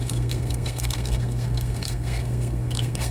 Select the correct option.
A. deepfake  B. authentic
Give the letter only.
A